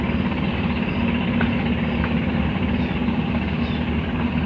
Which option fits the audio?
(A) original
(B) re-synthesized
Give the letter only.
A